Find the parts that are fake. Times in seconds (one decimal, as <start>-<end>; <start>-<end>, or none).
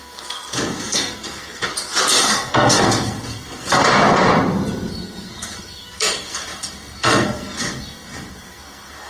0.0-1.7; 2.2-3.8; 4.9-9.1